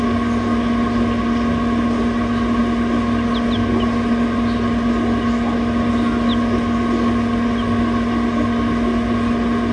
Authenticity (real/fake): real